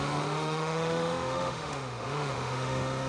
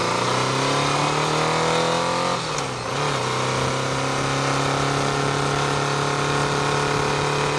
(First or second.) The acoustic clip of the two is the second